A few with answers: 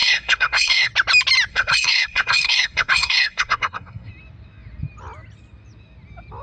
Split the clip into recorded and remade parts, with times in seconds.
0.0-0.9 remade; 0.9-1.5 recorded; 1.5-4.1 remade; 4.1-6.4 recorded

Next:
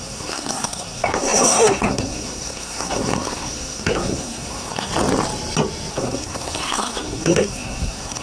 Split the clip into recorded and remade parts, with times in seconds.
0.0-4.9 remade; 4.9-5.9 recorded; 5.9-8.2 remade